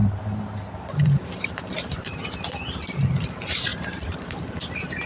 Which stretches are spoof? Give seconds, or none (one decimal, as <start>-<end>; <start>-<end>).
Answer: 0.8-2.2; 3.2-5.1